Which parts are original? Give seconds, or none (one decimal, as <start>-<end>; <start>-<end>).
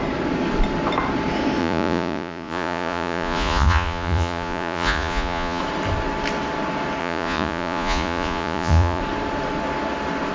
0.0-1.6; 5.6-7.0; 9.0-10.3